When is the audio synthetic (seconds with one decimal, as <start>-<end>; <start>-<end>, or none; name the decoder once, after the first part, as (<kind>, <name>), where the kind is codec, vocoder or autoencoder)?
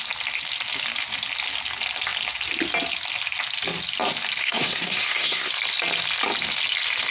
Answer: 4.4-5.5 (codec, SNAC)